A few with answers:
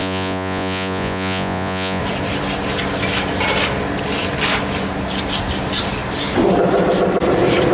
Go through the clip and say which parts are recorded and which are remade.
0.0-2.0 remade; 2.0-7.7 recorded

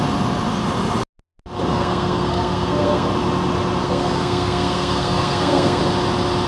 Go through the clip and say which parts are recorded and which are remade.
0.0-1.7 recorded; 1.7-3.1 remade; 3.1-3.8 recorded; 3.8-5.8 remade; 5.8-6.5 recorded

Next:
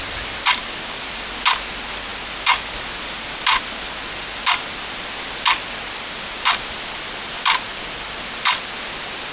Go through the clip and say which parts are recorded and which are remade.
0.0-9.3 recorded